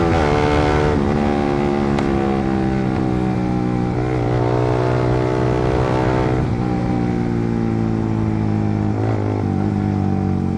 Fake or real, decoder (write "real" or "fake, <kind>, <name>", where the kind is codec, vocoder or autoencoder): real